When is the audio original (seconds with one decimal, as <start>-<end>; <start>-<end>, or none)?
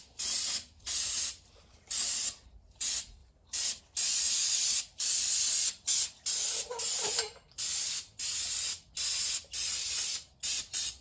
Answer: 0.0-3.2; 3.8-4.6; 5.4-11.0